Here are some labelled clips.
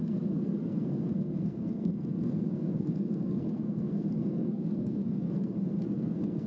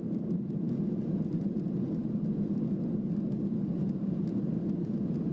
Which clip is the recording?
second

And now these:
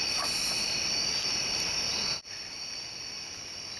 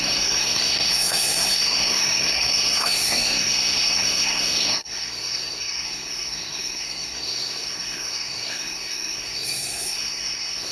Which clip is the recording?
first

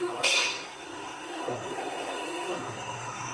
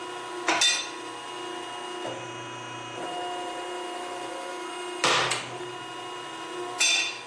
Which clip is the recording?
second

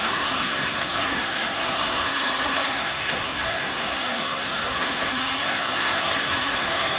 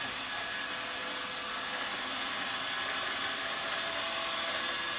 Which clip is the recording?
second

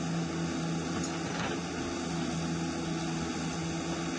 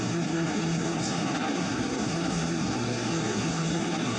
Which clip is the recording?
first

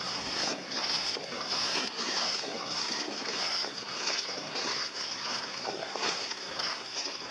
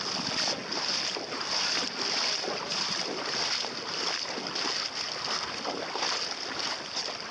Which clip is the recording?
second